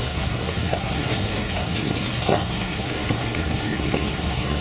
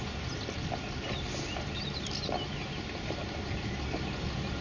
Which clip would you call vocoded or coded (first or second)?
first